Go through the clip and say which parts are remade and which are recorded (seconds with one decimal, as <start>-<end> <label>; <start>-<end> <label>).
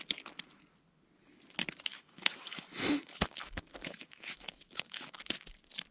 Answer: 0.0-1.9 recorded; 1.9-5.1 remade; 5.1-5.9 recorded